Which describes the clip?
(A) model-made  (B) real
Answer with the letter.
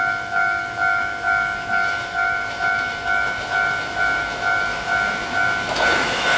A